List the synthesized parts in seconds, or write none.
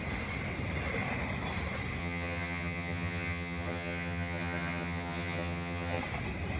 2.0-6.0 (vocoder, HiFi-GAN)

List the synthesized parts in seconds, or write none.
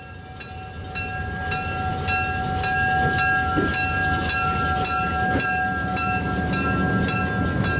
none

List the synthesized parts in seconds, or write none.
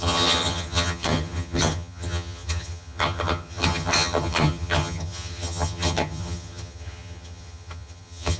0.0-8.4 (vocoder, HiFi-GAN)